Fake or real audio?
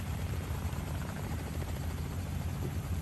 fake